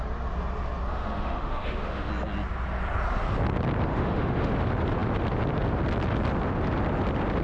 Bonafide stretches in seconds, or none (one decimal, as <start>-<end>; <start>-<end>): 0.0-0.9; 2.1-3.9; 4.5-7.4